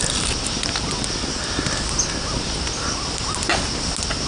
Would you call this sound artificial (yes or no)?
no